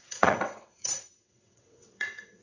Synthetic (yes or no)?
yes